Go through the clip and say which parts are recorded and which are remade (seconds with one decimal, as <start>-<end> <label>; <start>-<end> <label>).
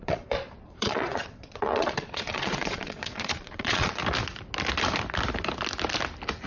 0.0-4.0 remade; 4.0-6.5 recorded